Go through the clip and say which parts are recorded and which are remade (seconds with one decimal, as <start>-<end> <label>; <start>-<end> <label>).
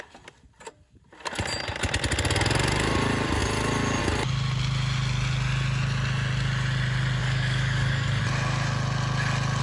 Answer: 0.0-7.2 recorded; 7.2-8.2 remade; 8.2-9.6 recorded